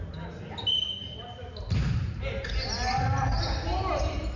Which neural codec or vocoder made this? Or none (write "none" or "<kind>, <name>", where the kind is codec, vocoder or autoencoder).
none